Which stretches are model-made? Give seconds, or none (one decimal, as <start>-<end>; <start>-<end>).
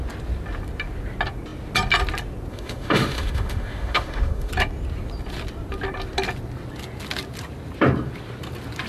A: 2.5-4.5